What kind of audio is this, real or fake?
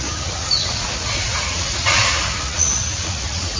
fake